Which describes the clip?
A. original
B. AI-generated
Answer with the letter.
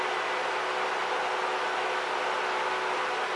A